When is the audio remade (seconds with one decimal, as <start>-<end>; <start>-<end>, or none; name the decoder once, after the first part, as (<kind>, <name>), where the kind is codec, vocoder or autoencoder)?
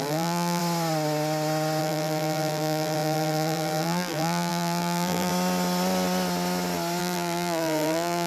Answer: 0.0-0.6 (vocoder, BigVGAN v2); 1.8-5.3; 7.0-8.3